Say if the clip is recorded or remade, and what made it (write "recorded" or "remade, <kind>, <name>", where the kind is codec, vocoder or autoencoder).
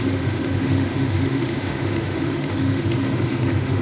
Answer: remade, autoencoder, DAC-VAE